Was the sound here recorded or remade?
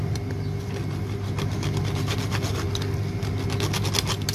recorded